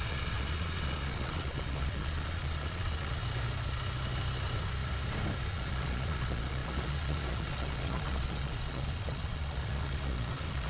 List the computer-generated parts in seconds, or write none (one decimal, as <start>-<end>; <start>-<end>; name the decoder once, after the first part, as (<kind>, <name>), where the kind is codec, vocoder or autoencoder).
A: 0.0-3.2 (vocoder, Vocos); 5.5-10.7